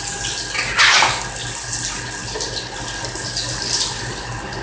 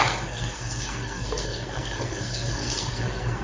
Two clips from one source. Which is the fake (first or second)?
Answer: second